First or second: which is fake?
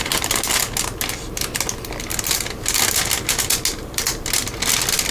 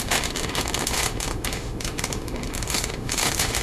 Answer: second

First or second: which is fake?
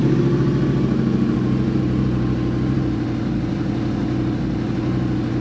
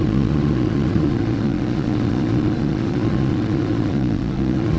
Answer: second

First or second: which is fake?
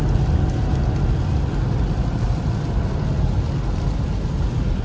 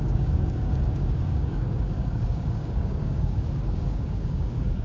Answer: second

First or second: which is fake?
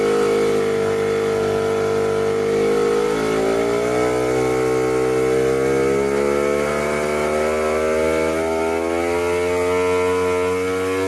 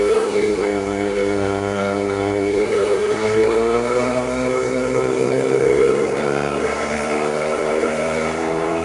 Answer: second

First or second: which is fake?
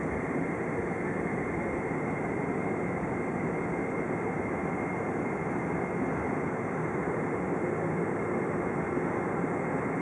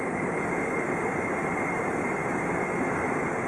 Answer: second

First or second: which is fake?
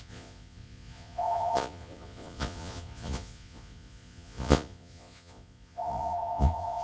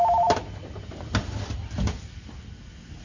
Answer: first